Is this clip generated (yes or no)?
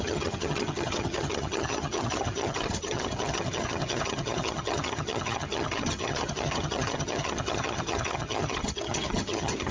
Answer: yes